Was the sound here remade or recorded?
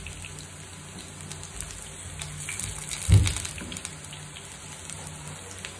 recorded